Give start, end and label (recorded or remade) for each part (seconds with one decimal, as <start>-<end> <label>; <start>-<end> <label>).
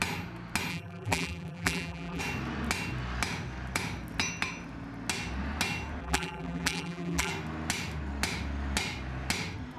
0.0-0.7 recorded; 0.7-2.2 remade; 2.2-6.0 recorded; 6.0-7.3 remade; 7.3-9.8 recorded